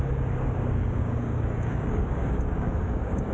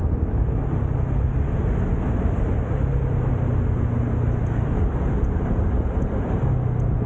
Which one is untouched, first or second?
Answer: second